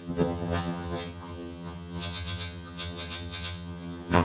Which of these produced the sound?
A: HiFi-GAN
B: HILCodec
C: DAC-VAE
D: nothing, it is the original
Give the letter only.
A